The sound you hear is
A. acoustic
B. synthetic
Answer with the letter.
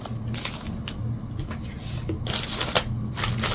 A